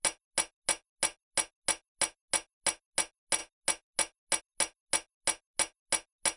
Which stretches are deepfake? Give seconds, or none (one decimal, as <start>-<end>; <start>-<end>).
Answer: none